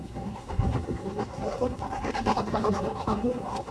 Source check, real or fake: fake